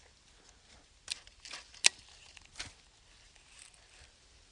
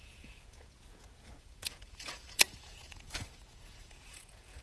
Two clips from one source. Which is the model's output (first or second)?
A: second